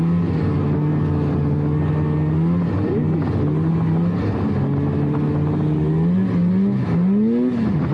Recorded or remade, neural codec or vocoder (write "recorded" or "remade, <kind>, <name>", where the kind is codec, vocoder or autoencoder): recorded